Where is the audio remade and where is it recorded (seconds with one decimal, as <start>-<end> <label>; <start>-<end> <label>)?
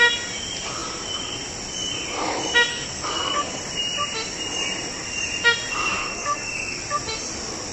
0.0-2.7 recorded; 2.7-3.6 remade; 3.6-6.0 recorded; 6.0-6.8 remade; 6.8-7.7 recorded